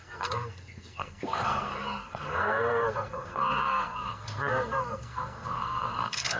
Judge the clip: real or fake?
fake